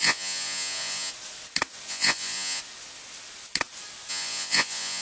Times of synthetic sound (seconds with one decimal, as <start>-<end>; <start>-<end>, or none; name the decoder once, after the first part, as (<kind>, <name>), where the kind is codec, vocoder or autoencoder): 0.0-1.1 (vocoder, Vocos); 1.9-2.6; 4.1-5.0

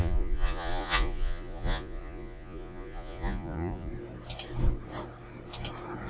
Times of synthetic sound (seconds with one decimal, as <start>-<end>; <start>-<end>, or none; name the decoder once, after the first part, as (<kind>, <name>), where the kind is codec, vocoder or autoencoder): 0.0-3.9 (vocoder, Vocos)

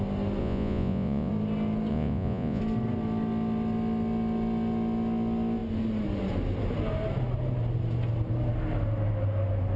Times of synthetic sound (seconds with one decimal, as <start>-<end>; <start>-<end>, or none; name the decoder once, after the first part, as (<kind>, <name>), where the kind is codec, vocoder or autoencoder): 0.4-1.3 (vocoder, Vocos); 1.9-2.6

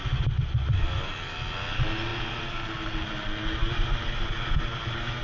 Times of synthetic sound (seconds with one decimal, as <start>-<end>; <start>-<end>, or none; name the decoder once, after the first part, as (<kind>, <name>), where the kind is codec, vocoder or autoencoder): none